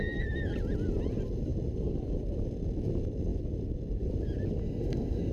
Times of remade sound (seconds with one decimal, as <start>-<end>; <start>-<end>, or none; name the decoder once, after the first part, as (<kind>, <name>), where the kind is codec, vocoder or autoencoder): 4.6-5.3 (codec, SNAC)